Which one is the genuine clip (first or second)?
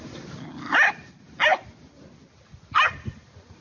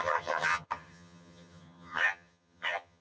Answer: first